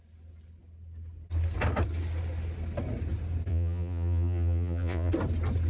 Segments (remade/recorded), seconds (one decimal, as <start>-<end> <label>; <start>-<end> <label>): 0.0-3.5 recorded; 3.5-5.1 remade; 5.1-5.7 recorded